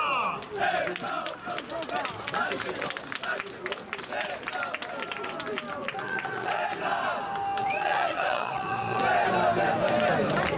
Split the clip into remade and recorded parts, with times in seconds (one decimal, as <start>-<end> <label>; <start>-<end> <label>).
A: 0.0-5.8 recorded; 5.8-6.6 remade; 6.6-7.6 recorded; 7.6-9.0 remade; 9.0-10.6 recorded